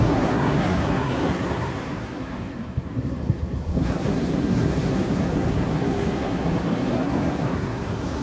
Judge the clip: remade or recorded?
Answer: remade